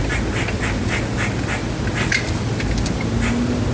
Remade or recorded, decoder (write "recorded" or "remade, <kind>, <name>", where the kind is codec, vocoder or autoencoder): recorded